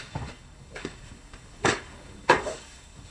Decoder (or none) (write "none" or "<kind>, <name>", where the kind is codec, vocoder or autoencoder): codec, DAC